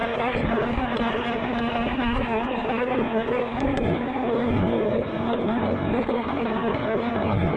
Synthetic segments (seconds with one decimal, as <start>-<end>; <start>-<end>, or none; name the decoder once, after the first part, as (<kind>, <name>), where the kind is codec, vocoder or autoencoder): 0.0-7.6 (codec, SNAC)